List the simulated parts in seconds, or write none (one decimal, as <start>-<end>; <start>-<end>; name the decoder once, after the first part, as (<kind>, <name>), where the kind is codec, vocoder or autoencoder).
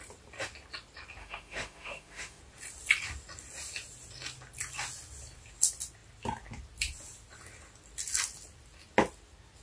1.2-2.4 (autoencoder, DAC-VAE)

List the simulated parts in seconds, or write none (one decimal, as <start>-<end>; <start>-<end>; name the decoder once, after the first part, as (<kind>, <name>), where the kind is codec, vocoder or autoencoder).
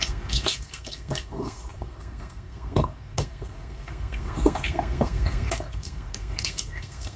0.0-7.2 (codec, SNAC)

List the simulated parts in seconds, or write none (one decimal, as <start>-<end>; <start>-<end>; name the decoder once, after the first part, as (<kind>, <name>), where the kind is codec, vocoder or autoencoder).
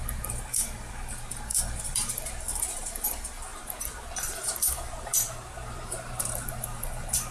0.0-7.3 (vocoder, BigVGAN v2)